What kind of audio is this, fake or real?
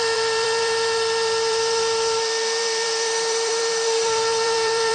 fake